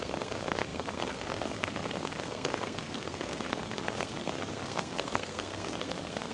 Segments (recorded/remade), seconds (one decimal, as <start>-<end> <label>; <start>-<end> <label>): 0.0-6.3 remade